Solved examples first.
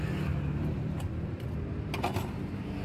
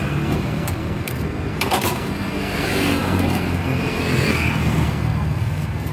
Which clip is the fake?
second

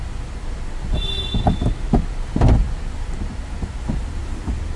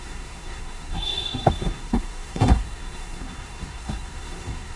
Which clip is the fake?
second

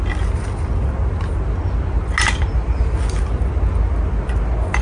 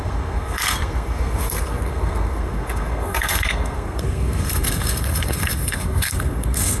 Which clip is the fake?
second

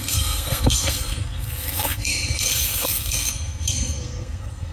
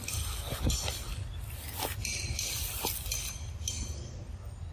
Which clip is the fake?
first